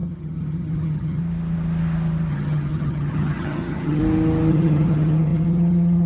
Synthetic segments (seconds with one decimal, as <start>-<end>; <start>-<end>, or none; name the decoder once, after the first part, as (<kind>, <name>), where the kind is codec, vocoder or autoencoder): 0.0-1.2 (vocoder, HiFi-GAN); 2.3-4.0; 4.5-6.1